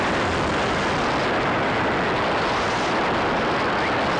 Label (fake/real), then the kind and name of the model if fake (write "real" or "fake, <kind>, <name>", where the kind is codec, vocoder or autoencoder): real